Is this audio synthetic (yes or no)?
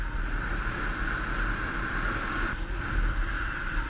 no